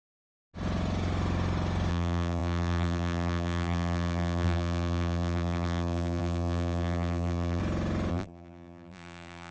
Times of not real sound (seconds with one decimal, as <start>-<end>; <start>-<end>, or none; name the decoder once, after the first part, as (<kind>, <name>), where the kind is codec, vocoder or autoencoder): 1.9-7.6 (vocoder, BigVGAN v2); 8.1-9.5